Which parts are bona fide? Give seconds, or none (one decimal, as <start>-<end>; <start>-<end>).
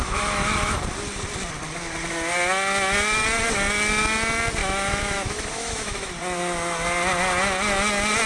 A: 0.8-4.6; 6.1-8.3